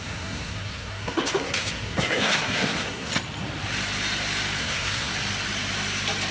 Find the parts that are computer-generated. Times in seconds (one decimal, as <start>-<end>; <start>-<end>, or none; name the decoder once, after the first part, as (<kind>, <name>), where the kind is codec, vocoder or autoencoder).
0.0-3.1 (codec, SNAC); 4.6-5.1